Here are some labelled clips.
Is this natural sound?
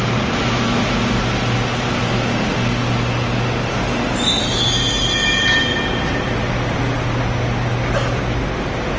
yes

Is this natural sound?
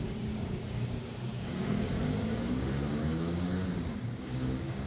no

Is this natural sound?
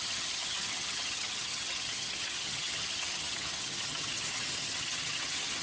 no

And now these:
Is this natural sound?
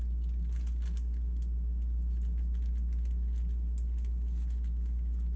yes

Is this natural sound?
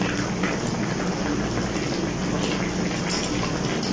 yes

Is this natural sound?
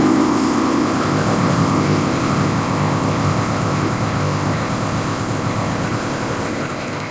no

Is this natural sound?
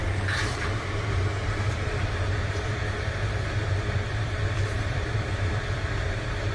no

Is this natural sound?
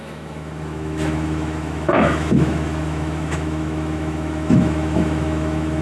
no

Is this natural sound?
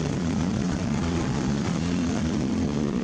no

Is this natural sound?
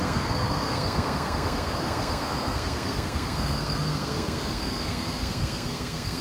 no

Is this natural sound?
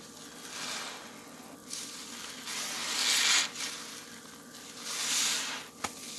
yes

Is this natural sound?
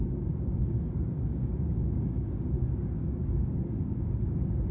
no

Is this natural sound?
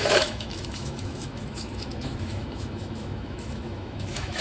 no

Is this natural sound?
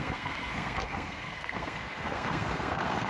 no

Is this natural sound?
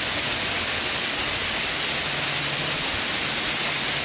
yes